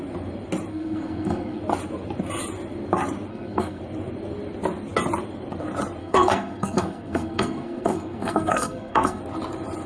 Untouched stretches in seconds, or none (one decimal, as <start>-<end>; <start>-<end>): 0.0-0.7; 1.6-3.3; 3.8-6.0; 9.2-9.9